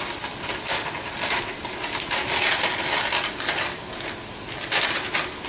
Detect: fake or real real